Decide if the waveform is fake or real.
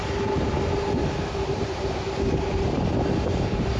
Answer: real